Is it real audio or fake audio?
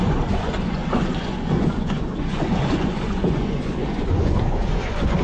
fake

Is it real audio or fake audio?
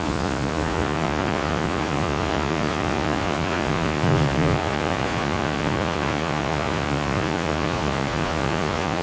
fake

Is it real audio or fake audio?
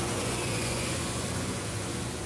fake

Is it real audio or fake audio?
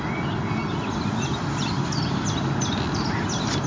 real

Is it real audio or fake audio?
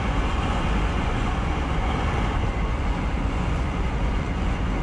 fake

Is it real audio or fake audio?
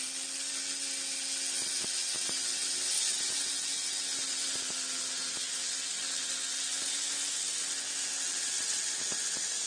real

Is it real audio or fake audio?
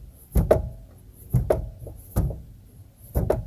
real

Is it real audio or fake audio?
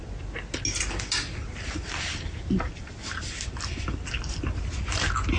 real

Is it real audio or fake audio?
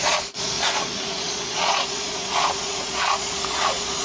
fake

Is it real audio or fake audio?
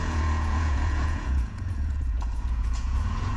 fake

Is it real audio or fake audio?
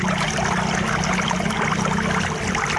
real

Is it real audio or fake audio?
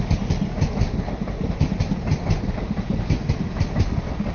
real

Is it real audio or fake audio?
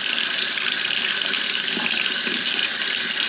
real